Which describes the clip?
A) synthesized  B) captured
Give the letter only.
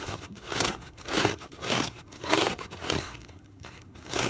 A